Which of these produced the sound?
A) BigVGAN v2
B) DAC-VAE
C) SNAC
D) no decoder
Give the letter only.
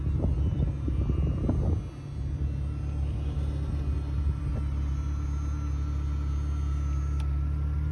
D